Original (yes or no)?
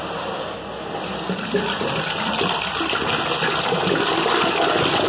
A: yes